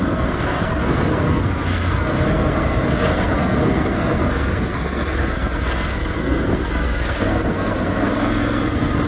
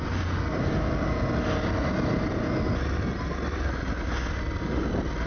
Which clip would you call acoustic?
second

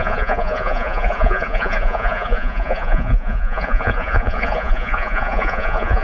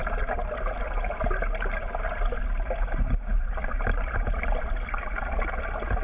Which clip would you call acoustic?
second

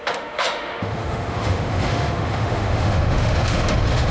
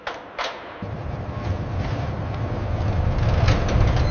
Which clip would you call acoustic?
second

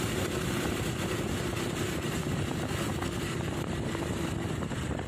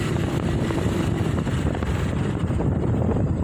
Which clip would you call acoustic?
first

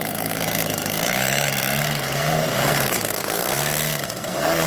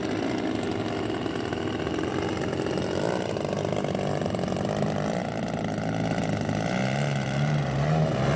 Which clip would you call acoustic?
second